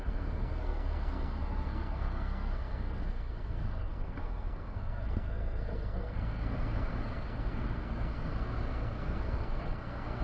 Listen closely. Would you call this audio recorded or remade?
remade